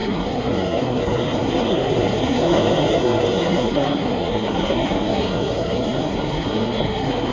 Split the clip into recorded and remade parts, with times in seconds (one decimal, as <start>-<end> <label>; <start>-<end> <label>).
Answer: 0.0-7.3 remade